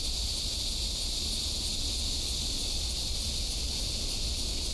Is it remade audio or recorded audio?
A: recorded